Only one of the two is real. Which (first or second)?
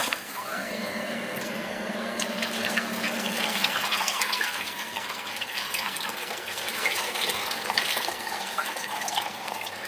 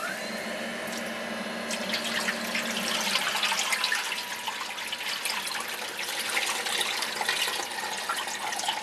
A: second